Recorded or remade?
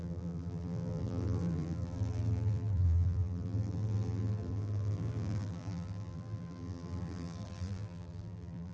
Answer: remade